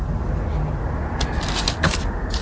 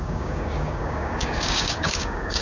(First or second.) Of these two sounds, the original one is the first